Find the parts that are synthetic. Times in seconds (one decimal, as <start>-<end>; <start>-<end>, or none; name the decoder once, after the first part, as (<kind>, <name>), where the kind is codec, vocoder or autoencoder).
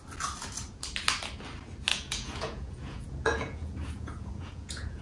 1.9-5.0 (vocoder, Vocos)